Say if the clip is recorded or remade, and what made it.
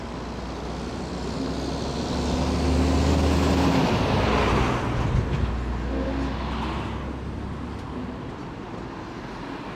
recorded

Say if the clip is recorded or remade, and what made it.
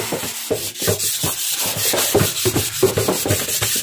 recorded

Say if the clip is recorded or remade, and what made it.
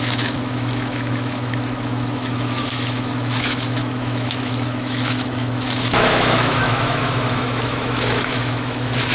remade, autoencoder, DAC-VAE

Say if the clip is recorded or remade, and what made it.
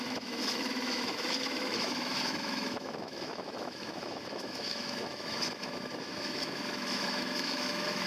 remade, autoencoder, DAC-VAE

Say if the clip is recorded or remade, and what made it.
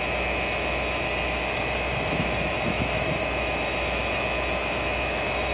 remade, autoencoder, DAC-VAE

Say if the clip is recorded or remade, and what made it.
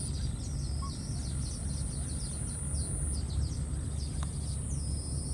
recorded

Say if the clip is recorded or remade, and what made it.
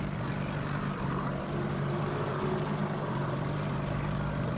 recorded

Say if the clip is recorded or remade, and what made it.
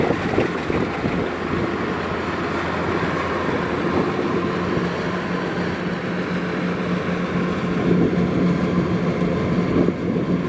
recorded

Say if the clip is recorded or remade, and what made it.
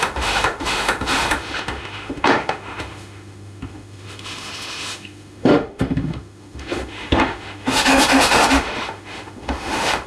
remade, autoencoder, DAC-VAE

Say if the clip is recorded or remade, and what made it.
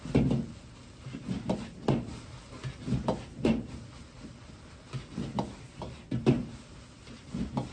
recorded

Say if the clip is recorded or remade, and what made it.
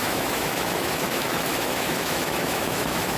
remade, autoencoder, DAC-VAE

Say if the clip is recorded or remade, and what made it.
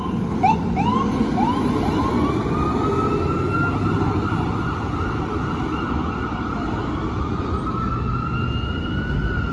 recorded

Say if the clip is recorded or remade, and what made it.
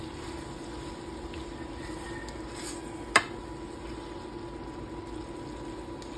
recorded